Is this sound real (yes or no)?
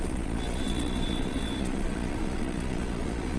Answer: no